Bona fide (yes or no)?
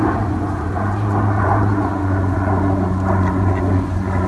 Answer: no